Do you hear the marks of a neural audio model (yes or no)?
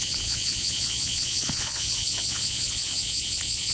yes